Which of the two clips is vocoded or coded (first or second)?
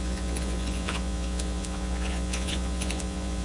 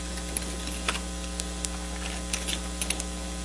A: first